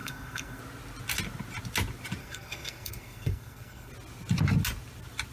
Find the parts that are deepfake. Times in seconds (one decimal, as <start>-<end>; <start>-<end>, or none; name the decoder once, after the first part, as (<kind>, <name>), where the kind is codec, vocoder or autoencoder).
0.0-0.6 (codec, SNAC); 2.2-3.9